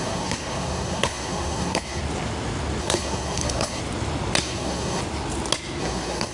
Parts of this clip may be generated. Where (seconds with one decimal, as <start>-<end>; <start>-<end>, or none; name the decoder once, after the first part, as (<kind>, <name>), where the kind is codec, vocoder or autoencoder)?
0.0-2.0 (codec, SNAC); 2.8-3.8; 4.4-5.0; 5.8-6.3